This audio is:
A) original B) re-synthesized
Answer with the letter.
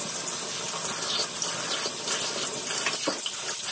A